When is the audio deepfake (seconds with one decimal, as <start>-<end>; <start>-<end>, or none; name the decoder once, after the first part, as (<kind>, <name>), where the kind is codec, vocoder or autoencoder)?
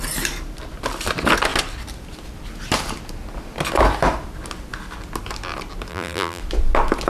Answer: 5.9-6.4 (vocoder, BigVGAN v2)